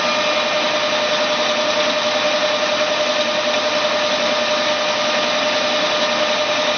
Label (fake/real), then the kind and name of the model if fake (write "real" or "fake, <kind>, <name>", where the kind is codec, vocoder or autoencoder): real